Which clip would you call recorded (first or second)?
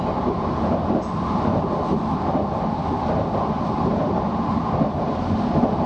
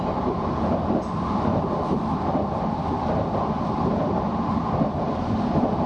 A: first